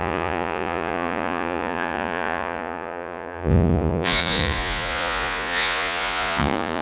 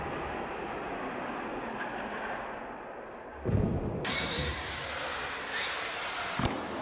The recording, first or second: second